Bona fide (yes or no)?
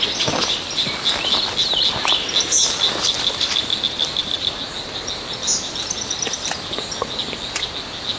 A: yes